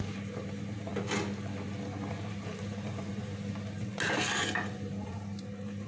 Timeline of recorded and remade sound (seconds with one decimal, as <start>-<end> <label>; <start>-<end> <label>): 0.0-0.9 remade; 0.9-2.1 recorded; 2.1-3.9 remade; 3.9-4.4 recorded; 4.4-5.9 remade